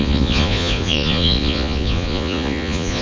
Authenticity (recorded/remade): remade